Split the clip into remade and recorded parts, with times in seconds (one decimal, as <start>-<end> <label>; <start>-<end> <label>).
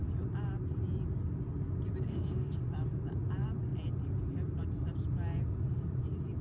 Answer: 0.0-2.1 recorded; 2.1-2.6 remade; 2.6-6.4 recorded